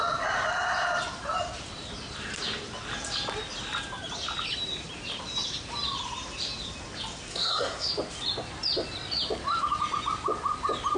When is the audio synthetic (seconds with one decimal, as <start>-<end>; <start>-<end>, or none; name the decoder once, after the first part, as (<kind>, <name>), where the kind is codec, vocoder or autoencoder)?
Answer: 7.3-7.9 (codec, SNAC)